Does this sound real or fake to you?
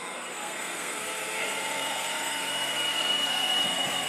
fake